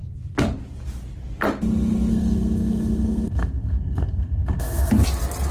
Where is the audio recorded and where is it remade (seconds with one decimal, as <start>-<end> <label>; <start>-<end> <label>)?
0.0-2.1 recorded; 2.1-4.9 remade; 4.9-5.5 recorded